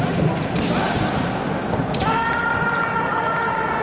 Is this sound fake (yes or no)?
no